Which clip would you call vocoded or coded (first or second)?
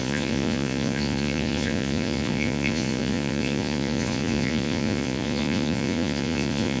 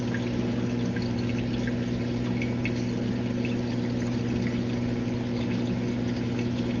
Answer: first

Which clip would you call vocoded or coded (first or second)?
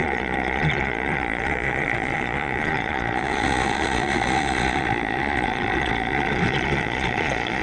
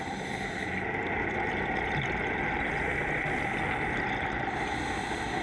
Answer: first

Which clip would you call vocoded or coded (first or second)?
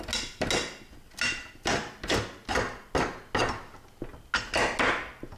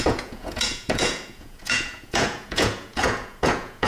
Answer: second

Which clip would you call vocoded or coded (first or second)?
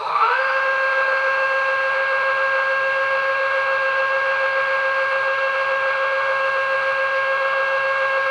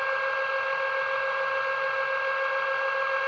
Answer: first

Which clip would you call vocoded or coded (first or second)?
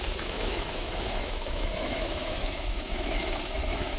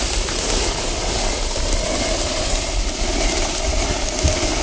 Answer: first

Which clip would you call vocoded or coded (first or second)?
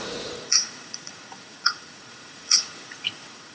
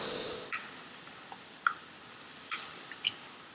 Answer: first